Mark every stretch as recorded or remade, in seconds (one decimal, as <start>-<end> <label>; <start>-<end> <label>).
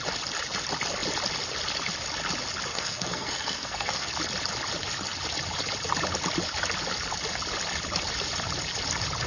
0.0-2.7 recorded; 2.7-4.1 remade; 4.1-9.3 recorded